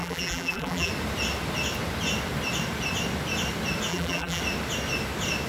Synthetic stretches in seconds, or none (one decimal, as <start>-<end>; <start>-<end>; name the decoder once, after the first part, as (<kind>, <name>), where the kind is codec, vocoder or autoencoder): 0.0-0.9 (vocoder, BigVGAN v2); 3.9-4.4

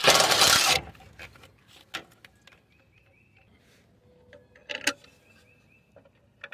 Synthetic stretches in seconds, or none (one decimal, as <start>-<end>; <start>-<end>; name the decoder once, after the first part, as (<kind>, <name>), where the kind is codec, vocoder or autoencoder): none

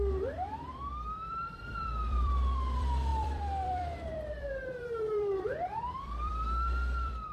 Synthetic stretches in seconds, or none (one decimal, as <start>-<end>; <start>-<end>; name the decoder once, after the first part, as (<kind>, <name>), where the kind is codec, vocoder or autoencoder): 0.0-7.3 (vocoder, BigVGAN v2)